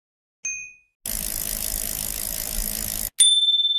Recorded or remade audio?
recorded